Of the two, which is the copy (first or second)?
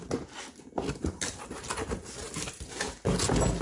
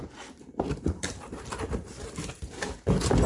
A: second